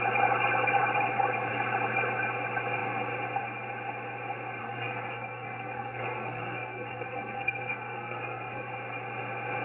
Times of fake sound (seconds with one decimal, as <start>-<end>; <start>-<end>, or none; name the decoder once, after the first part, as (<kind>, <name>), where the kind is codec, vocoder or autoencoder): 4.6-8.7 (codec, SNAC)

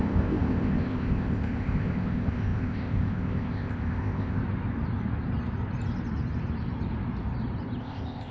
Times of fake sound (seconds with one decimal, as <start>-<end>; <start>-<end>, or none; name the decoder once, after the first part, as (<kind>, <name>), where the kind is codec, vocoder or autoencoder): 0.0-4.4 (codec, ZipCodec); 7.8-8.3

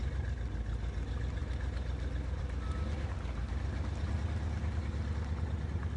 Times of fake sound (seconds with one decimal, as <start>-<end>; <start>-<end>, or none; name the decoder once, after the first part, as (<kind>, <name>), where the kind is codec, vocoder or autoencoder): none

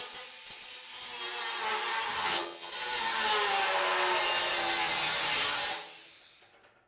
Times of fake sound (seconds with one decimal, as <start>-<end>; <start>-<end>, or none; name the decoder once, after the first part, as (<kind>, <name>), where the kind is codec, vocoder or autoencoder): 2.2-2.7 (vocoder, HiFi-GAN)